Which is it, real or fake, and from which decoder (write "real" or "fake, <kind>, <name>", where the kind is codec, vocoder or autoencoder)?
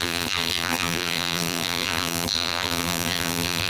fake, vocoder, BigVGAN v2